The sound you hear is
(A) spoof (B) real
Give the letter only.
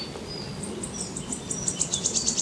B